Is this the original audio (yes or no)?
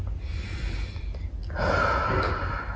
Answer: yes